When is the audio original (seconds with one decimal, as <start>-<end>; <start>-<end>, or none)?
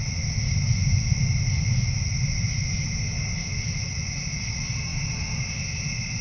0.0-6.2